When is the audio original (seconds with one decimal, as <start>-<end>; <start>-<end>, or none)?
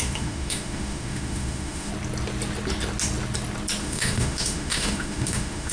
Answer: 1.9-3.8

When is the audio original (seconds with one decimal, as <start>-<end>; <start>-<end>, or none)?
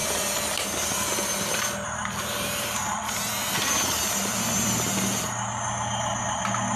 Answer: 0.0-6.8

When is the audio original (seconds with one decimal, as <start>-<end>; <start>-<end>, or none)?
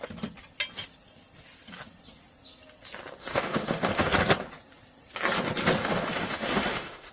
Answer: 0.0-3.2; 4.1-5.8